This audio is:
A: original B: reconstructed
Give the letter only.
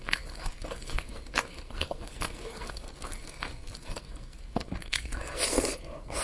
B